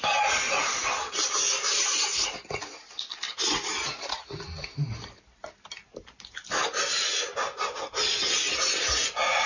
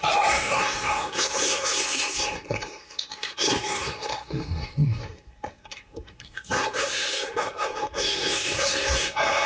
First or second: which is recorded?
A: first